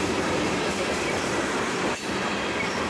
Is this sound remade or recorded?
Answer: remade